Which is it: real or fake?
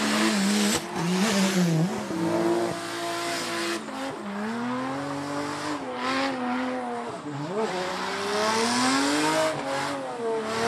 real